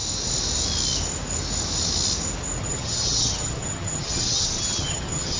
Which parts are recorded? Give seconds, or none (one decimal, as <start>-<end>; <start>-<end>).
0.0-2.6